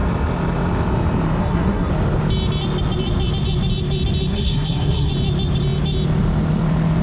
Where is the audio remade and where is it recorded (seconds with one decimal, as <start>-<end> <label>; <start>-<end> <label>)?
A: 0.0-1.4 recorded; 1.4-1.9 remade; 1.9-4.3 recorded; 4.3-5.1 remade; 5.1-7.0 recorded